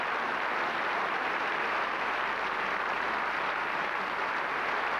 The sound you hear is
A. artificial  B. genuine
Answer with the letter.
B